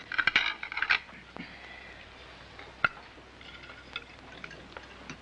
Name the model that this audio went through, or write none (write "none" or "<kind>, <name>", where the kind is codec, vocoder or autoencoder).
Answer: none